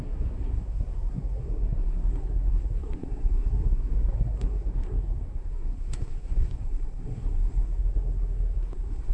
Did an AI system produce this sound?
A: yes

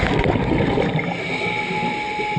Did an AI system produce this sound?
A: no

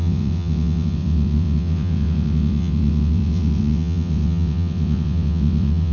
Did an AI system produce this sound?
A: yes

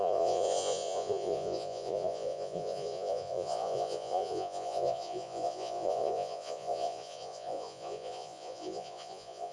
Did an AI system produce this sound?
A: yes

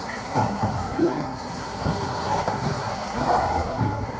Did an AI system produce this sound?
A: yes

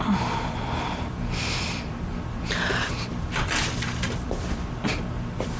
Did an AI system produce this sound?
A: yes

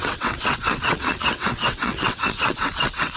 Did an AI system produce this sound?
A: yes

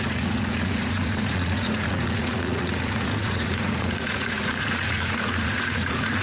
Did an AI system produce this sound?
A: yes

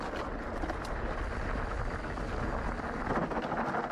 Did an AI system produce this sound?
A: no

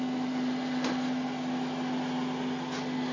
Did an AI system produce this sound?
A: no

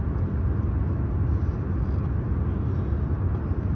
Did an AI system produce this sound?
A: no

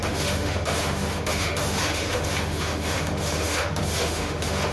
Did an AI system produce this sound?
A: yes